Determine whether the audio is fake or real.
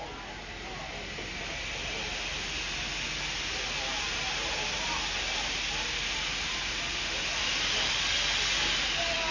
real